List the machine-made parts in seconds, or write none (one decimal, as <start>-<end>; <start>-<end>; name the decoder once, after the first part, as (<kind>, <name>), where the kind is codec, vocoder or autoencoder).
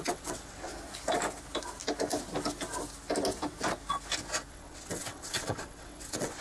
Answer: 0.0-0.7 (vocoder, WaveNeXt); 4.5-6.4